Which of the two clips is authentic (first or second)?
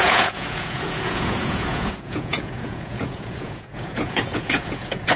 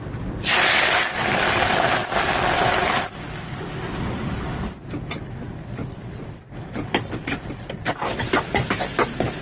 second